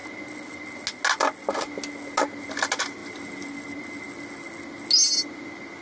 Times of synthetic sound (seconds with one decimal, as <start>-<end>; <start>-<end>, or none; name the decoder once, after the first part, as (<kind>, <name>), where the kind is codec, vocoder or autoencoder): 3.0-3.8 (vocoder, BigVGAN v2)